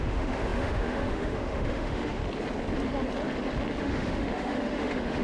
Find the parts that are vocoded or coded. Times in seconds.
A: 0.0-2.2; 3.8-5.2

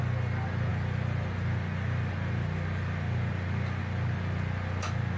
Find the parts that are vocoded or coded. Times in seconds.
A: none

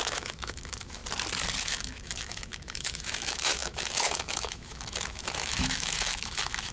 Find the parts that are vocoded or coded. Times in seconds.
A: 0.0-1.0; 1.6-6.7

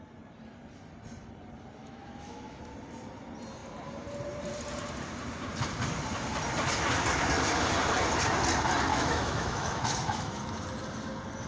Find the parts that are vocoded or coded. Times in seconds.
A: 1.8-2.6; 8.9-10.4